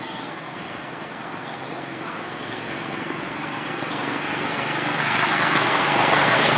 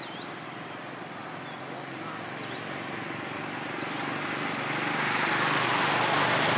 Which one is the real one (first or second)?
second